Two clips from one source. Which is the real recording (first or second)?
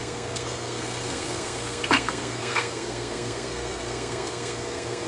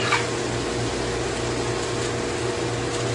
second